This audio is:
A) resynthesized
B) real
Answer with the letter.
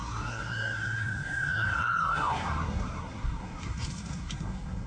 A